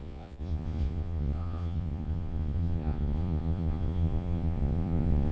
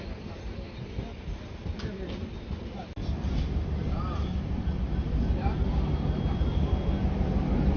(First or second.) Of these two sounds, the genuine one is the second